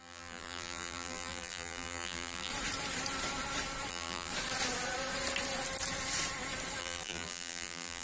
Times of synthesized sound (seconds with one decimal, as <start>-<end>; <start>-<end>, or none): 0.0-2.5; 3.9-4.3; 6.8-8.0